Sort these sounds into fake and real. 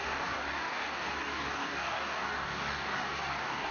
fake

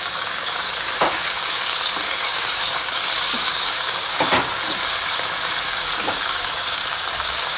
fake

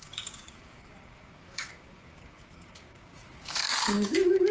fake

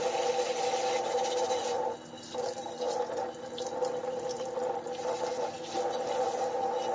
real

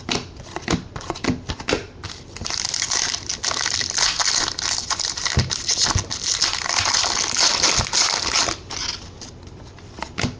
real